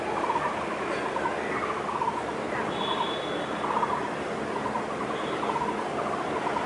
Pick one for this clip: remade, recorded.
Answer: recorded